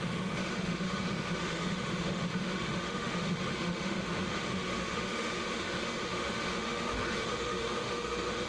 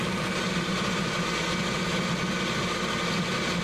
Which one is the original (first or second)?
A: second